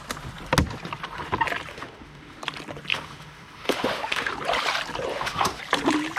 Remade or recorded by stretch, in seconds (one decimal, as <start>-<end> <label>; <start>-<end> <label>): 0.0-1.7 recorded; 1.7-2.4 remade; 2.4-2.9 recorded; 2.9-4.3 remade; 4.3-5.1 recorded; 5.1-5.6 remade; 5.6-6.2 recorded